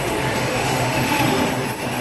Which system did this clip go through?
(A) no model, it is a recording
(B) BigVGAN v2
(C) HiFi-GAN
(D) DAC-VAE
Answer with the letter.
D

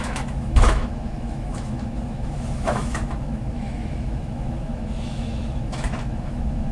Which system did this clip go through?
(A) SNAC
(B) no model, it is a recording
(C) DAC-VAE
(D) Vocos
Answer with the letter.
C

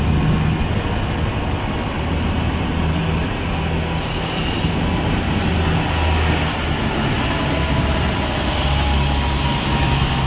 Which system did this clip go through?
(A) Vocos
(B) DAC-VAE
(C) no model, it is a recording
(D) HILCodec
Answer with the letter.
C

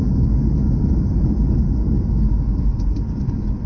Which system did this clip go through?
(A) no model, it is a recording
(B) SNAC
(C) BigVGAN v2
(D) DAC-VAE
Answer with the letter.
A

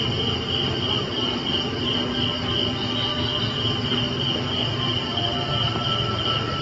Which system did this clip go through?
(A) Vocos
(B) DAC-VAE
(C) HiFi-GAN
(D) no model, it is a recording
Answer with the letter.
D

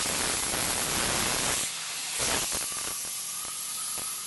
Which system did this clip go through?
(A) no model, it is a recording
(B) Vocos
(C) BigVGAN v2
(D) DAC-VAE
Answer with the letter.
A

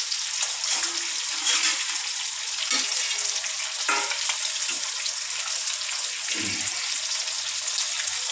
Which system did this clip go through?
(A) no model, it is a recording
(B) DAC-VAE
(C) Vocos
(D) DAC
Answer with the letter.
A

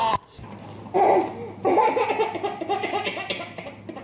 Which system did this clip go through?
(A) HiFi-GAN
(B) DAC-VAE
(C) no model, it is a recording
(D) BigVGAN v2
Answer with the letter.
C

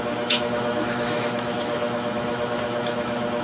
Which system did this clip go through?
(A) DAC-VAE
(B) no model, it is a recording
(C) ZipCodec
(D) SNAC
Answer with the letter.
A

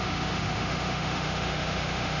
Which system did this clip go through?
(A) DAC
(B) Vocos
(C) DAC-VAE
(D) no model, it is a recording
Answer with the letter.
C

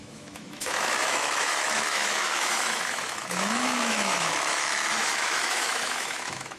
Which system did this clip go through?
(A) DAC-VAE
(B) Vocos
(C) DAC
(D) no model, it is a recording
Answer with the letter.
A